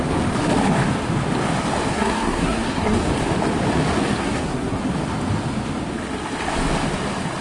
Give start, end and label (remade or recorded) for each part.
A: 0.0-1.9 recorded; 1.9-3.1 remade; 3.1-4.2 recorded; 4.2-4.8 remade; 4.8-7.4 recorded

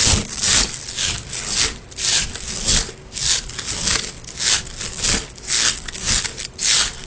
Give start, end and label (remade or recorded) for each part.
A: 0.0-7.1 recorded

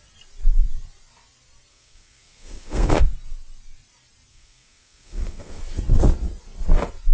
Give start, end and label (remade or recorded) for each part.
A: 0.0-1.7 recorded; 1.7-3.0 remade; 3.0-4.3 recorded; 4.3-5.6 remade; 5.6-7.1 recorded

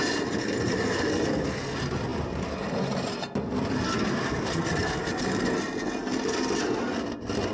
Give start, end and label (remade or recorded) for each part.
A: 0.0-7.5 recorded

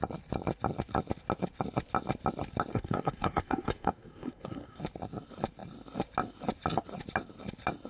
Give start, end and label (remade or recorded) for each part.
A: 0.0-2.7 recorded; 2.7-4.8 remade; 4.8-7.9 recorded

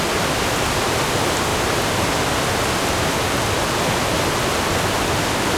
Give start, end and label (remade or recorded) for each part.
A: 0.0-5.6 recorded

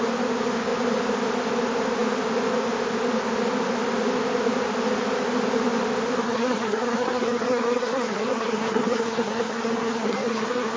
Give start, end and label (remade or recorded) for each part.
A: 0.0-6.2 recorded; 6.2-10.8 remade